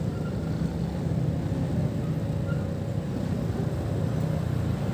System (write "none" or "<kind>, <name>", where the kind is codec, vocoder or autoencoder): none